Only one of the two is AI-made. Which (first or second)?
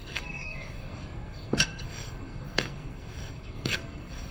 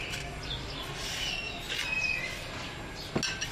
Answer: first